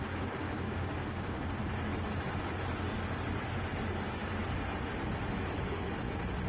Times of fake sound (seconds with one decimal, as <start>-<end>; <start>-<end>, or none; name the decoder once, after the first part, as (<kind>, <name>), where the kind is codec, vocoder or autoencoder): 0.4-1.4 (codec, DAC)